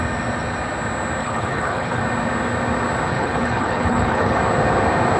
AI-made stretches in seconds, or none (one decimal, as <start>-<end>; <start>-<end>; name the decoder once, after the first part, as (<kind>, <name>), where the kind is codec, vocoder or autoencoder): 1.2-2.0 (codec, HILCodec); 3.1-4.4